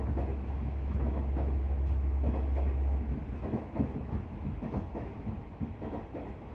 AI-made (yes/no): yes